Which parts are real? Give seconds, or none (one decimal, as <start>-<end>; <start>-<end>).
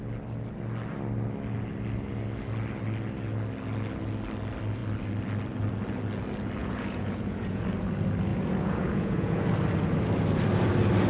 0.0-6.6; 7.6-8.3; 9.4-11.1